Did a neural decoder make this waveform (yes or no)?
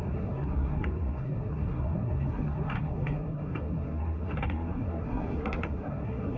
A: yes